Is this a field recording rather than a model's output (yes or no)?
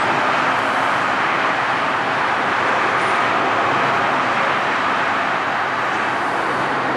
yes